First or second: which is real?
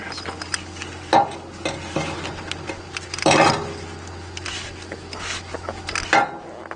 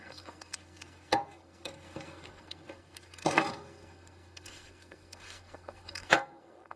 first